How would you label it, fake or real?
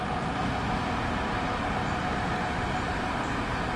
fake